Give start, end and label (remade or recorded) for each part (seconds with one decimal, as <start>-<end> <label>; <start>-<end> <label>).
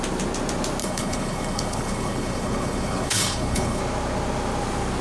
0.0-0.8 recorded; 0.8-3.8 remade; 3.8-5.0 recorded